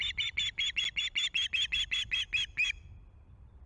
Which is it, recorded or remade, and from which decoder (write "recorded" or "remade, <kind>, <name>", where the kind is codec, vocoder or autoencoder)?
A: recorded